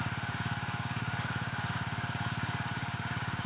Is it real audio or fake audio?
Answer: fake